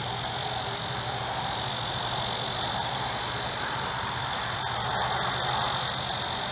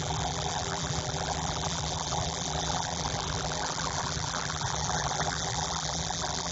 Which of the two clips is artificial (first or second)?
second